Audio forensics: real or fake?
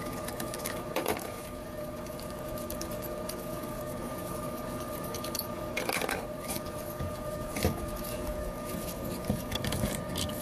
fake